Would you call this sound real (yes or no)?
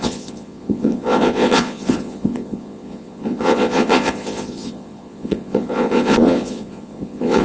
no